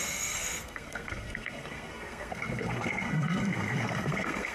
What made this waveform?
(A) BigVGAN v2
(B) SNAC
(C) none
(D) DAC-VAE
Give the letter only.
B